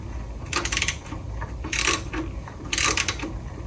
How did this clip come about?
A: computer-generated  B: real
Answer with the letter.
B